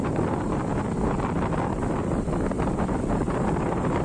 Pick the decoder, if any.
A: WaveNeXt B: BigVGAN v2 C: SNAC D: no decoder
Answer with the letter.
D